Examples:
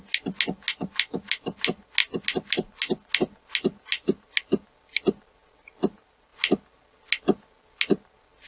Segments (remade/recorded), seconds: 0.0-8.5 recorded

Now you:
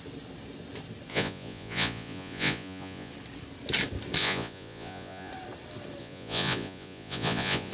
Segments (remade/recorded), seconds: 0.0-1.1 recorded; 1.1-3.1 remade; 3.1-4.2 recorded; 4.2-5.3 remade; 5.3-6.0 recorded; 6.0-7.7 remade

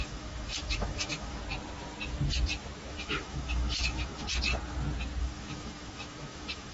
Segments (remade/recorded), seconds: 0.0-1.4 remade; 1.4-2.9 recorded; 2.9-4.3 remade; 4.3-5.2 recorded; 5.2-6.7 remade

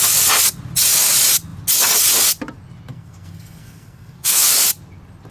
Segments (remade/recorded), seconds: 0.0-2.9 recorded; 2.9-4.5 remade; 4.5-5.3 recorded

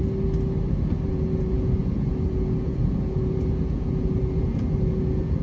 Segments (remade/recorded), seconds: 0.0-1.1 recorded; 1.1-5.4 remade

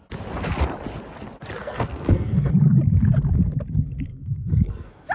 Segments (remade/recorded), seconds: 0.0-1.6 recorded; 1.6-2.5 remade; 2.5-4.1 recorded; 4.1-5.1 remade

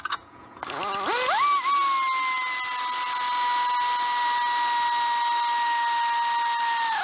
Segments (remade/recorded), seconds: 0.0-0.6 remade; 0.6-7.0 recorded